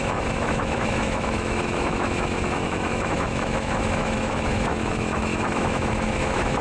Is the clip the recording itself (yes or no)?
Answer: no